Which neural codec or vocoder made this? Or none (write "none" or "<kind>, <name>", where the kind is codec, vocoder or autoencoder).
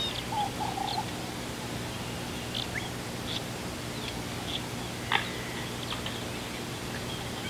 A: none